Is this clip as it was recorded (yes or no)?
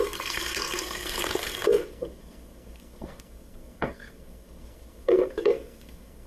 no